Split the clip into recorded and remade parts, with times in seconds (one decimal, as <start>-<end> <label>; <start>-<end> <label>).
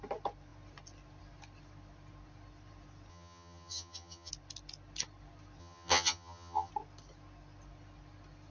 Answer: 0.0-3.1 recorded; 3.1-4.3 remade; 4.3-5.6 recorded; 5.6-6.7 remade; 6.7-8.5 recorded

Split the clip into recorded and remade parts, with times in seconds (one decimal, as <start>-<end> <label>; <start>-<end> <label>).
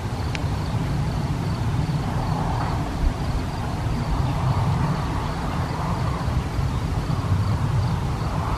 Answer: 0.0-8.6 remade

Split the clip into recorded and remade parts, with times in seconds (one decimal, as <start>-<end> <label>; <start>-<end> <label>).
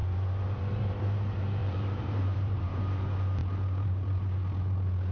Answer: 0.0-1.6 recorded; 1.6-2.8 remade; 2.8-5.1 recorded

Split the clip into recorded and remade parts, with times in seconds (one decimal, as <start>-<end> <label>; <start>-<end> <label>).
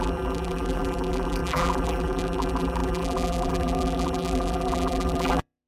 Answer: 0.0-5.7 remade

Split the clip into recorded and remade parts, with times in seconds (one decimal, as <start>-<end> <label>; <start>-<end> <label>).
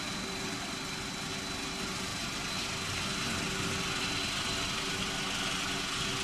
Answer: 0.0-6.2 recorded